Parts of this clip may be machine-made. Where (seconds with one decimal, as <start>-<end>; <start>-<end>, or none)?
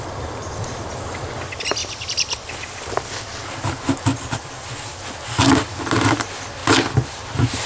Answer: 1.8-2.5; 4.1-5.0